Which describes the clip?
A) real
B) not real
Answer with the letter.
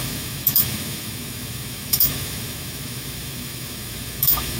B